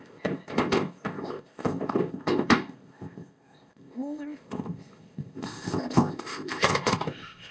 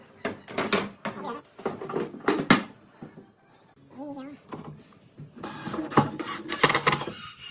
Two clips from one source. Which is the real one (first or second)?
second